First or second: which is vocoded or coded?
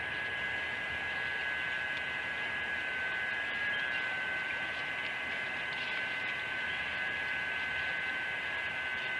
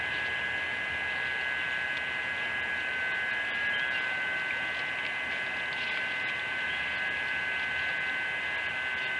first